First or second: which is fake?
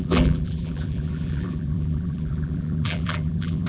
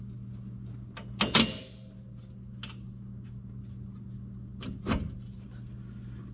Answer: first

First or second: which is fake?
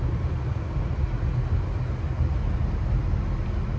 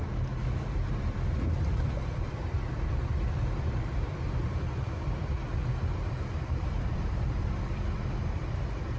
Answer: second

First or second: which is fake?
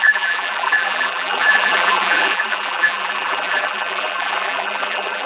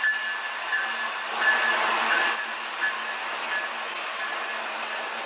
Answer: first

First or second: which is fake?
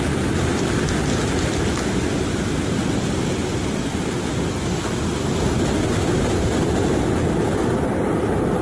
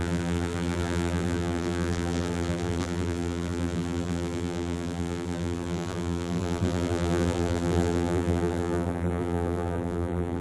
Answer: second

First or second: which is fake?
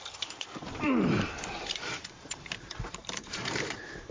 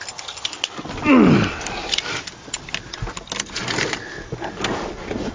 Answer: first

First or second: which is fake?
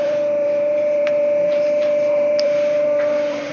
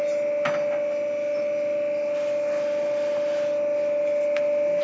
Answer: first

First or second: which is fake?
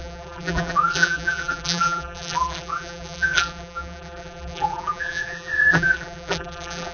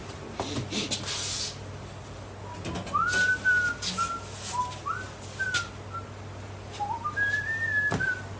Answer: first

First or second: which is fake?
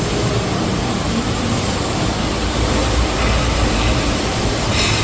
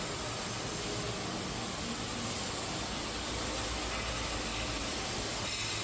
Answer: first